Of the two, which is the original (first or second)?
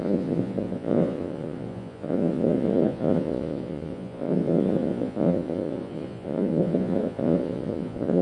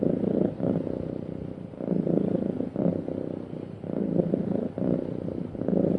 second